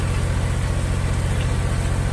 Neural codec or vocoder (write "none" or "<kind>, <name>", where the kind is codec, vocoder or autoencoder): none